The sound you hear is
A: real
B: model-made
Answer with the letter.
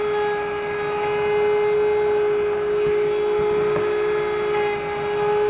A